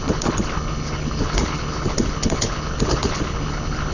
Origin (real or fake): fake